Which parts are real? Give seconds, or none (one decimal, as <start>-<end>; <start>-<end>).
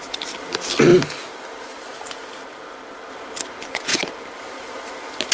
0.0-5.3